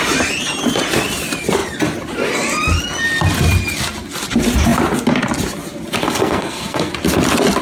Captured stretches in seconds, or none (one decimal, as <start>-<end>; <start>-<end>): 0.0-6.0; 6.9-7.6